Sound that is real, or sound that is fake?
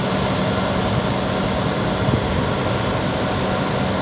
real